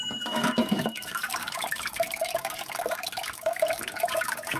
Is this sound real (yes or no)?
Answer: no